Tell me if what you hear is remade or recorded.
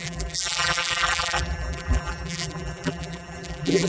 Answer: remade